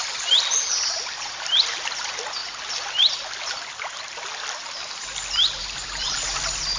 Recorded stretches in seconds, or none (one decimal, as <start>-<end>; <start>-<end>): 0.0-6.8